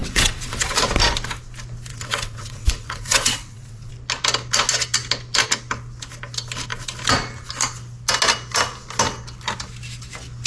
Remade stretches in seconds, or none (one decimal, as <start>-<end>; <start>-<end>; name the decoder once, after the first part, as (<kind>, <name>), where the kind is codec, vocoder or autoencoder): 0.0-0.8 (vocoder, WaveNeXt); 1.9-3.9